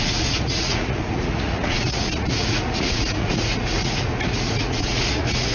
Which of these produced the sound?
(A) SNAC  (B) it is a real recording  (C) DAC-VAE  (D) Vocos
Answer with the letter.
D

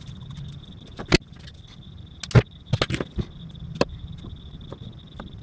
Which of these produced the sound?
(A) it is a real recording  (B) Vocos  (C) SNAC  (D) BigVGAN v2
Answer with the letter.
A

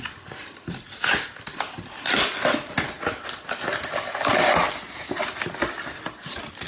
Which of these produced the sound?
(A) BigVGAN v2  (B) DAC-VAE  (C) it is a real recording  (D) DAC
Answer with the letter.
C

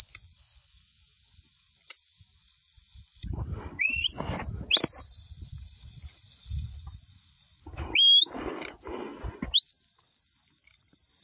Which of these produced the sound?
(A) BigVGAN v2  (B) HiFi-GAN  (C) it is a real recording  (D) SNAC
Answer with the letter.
C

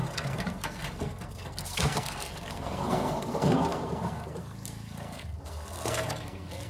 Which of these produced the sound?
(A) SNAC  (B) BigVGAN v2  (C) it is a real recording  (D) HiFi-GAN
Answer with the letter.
A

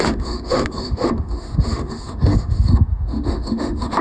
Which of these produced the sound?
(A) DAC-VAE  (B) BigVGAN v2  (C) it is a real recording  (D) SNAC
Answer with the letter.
A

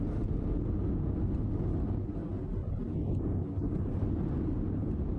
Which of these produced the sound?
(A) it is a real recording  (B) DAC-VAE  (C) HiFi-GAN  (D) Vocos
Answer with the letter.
A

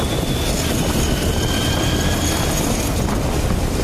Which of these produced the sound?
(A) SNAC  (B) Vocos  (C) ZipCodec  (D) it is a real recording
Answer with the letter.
D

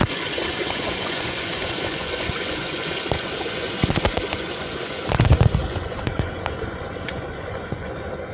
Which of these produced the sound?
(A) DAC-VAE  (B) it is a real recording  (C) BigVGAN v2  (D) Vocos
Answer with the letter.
D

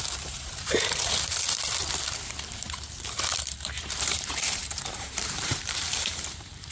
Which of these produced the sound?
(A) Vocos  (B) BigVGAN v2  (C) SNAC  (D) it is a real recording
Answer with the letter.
B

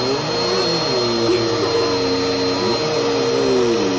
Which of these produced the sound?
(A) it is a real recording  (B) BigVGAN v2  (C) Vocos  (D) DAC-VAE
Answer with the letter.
A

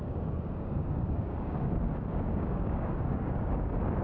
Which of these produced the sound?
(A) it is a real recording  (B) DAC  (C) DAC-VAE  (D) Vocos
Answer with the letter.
B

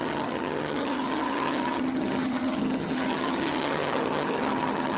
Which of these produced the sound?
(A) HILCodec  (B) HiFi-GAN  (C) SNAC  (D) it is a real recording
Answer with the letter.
B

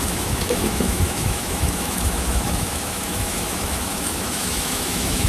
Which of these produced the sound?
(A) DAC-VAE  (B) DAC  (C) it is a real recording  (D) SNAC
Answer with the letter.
A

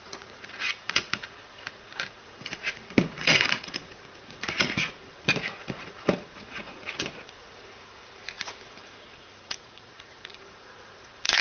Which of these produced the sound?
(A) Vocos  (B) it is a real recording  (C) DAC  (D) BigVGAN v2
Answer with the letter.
A